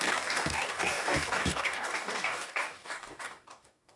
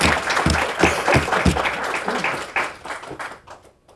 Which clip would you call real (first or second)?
second